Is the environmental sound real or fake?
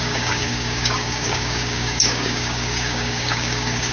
fake